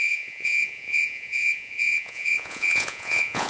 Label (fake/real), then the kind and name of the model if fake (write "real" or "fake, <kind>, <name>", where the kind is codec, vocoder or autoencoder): fake, vocoder, Vocos